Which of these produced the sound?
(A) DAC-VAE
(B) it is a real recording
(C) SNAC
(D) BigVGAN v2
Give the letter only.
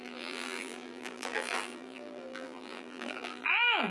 D